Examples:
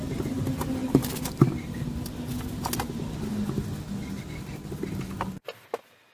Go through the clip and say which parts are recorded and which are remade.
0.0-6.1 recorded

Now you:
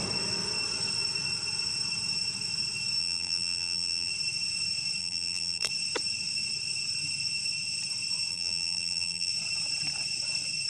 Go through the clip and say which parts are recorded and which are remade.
0.0-3.0 recorded; 3.0-4.1 remade; 4.1-5.0 recorded; 5.0-5.7 remade; 5.7-8.3 recorded; 8.3-9.3 remade; 9.3-10.7 recorded

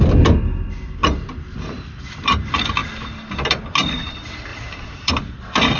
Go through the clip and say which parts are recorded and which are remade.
0.0-1.0 recorded; 1.0-2.3 remade; 2.3-4.5 recorded; 4.5-5.1 remade; 5.1-5.8 recorded

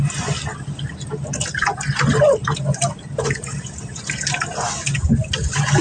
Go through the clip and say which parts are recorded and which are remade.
0.0-2.4 recorded; 2.4-4.0 remade; 4.0-5.8 recorded

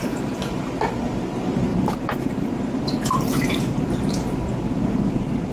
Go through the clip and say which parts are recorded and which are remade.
0.0-1.2 remade; 1.2-1.7 recorded; 1.7-5.0 remade; 5.0-5.5 recorded

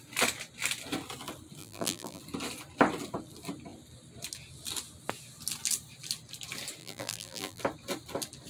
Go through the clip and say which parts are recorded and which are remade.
0.0-1.6 recorded; 1.6-2.2 remade; 2.2-6.8 recorded; 6.8-7.6 remade; 7.6-8.5 recorded

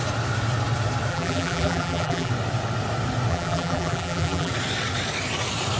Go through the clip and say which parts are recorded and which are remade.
0.0-1.1 recorded; 1.1-2.3 remade; 2.3-3.3 recorded; 3.3-4.5 remade; 4.5-5.8 recorded